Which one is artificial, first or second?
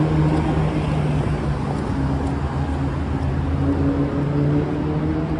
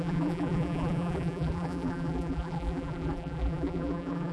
second